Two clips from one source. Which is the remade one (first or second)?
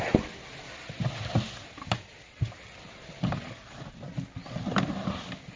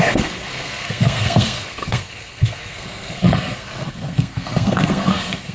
second